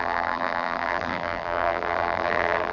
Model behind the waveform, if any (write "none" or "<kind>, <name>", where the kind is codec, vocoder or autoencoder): vocoder, BigVGAN v2